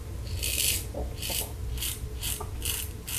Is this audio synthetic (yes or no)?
no